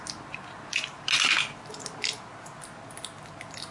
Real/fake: real